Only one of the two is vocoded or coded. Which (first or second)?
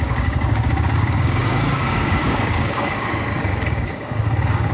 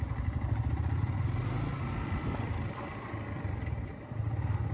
first